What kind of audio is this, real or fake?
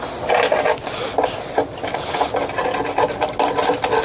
real